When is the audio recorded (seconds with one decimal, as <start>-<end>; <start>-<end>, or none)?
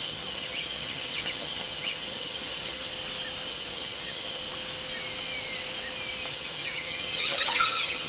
2.9-3.5; 4.4-6.3